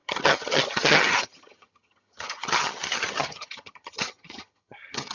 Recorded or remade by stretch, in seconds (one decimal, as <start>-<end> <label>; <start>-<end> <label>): 0.0-5.1 remade